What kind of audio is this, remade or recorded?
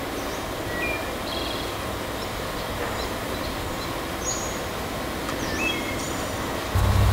recorded